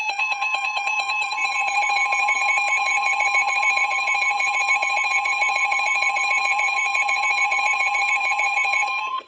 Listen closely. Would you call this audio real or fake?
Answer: fake